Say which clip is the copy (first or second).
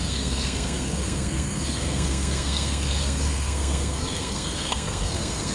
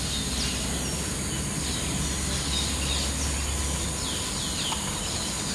first